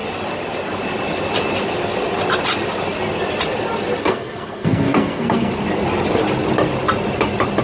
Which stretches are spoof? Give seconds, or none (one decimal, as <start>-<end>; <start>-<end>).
4.0-5.5